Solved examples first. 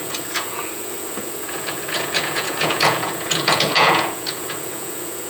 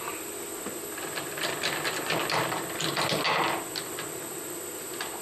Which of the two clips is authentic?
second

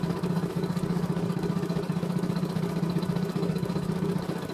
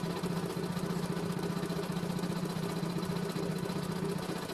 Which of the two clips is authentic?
second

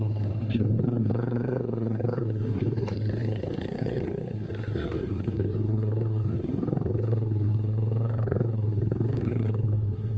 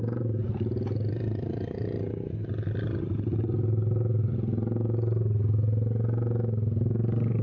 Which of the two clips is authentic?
second